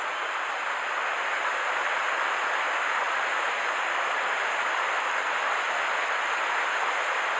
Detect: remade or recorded recorded